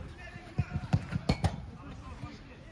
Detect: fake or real real